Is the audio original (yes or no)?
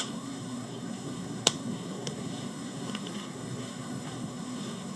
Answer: no